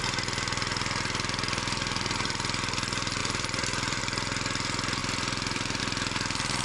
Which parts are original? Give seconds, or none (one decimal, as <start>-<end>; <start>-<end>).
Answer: 0.0-3.2; 4.0-5.0; 5.8-6.6